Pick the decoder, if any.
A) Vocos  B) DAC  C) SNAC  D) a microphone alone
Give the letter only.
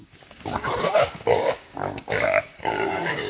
B